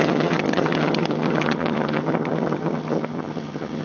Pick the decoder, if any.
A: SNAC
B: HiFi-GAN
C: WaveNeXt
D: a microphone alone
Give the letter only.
B